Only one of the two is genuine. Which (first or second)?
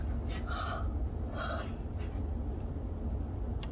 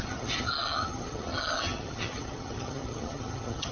first